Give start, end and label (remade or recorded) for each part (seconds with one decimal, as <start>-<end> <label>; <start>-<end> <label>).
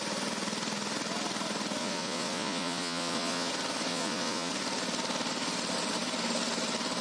0.0-1.8 recorded; 1.8-3.5 remade; 3.5-3.9 recorded; 3.9-4.5 remade; 4.5-7.0 recorded